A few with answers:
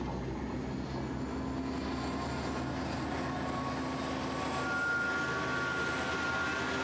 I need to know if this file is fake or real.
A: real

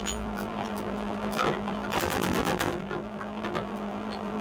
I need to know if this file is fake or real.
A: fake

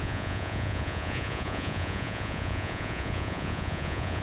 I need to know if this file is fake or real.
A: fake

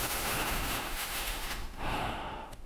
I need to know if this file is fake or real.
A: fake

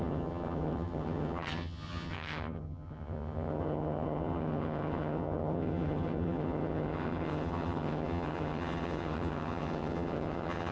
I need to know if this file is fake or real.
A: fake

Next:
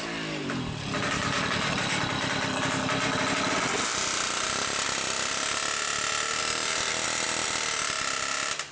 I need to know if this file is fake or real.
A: real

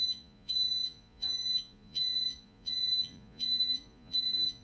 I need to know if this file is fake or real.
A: fake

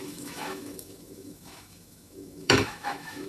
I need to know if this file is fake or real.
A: fake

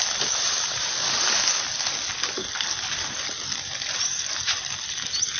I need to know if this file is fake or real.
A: real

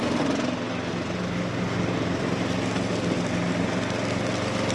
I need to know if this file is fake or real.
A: real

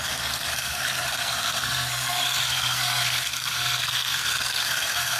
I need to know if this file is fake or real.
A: fake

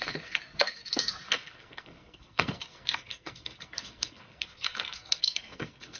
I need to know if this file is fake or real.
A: fake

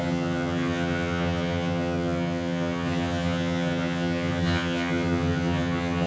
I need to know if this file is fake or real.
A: fake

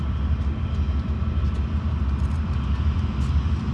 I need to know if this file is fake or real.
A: real